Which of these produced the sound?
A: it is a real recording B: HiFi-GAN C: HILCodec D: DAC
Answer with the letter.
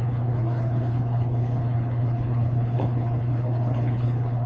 C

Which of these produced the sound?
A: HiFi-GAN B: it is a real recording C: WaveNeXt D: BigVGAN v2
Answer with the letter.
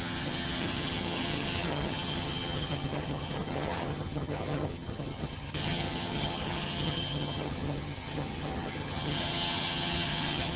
A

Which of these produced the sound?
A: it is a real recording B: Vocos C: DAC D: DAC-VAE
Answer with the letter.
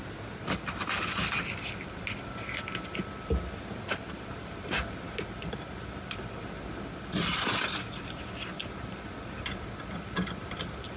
A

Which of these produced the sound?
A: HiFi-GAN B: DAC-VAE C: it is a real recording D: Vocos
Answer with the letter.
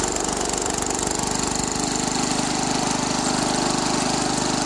C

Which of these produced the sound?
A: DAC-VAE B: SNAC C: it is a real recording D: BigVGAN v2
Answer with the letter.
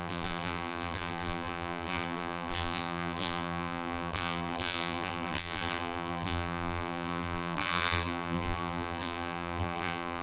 D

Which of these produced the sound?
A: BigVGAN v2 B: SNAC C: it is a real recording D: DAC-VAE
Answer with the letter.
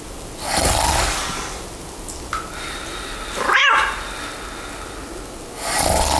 C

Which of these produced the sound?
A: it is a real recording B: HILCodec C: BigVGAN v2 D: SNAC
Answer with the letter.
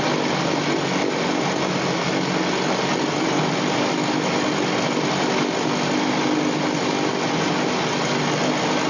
A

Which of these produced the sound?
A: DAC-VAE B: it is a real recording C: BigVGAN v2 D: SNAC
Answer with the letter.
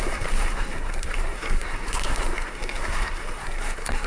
D